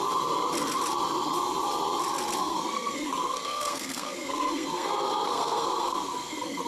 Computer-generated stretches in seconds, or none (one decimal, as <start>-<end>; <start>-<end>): 2.4-6.7